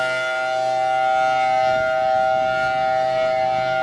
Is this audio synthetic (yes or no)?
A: no